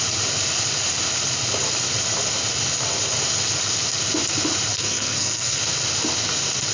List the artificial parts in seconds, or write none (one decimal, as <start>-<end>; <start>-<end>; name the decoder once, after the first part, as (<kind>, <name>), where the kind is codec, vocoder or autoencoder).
4.7-5.6 (codec, SNAC)

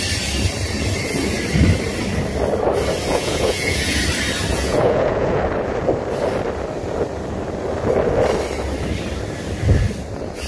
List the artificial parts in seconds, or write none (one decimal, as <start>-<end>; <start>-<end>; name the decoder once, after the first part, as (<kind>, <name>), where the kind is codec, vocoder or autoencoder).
3.1-4.0 (vocoder, Vocos); 4.5-5.4

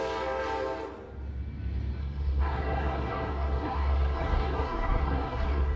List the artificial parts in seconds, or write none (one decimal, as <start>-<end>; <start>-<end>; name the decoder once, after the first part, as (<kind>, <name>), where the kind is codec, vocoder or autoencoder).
2.0-5.8 (codec, SNAC)

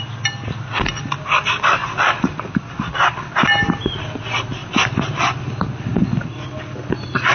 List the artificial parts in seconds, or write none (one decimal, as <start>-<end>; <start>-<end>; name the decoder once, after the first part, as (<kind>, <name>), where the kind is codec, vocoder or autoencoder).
none

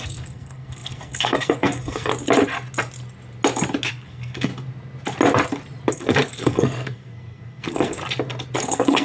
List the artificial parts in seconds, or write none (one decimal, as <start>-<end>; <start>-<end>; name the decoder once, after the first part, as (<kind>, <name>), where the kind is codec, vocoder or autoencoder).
0.0-2.1 (codec, SNAC); 3.9-4.5; 5.9-8.0; 8.6-9.0

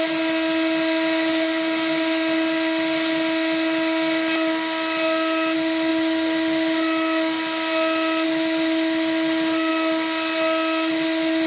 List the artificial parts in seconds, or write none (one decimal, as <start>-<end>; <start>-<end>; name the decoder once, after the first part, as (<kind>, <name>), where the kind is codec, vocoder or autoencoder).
none

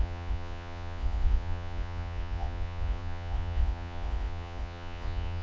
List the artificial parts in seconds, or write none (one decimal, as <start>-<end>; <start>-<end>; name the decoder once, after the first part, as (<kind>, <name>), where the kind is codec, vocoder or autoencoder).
0.0-5.4 (vocoder, Vocos)

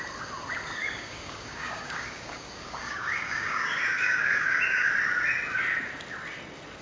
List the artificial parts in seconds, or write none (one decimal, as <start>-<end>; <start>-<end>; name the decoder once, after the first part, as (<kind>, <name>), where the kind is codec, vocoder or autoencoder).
0.8-4.9 (codec, DAC)